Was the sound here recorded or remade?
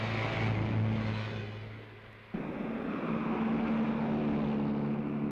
recorded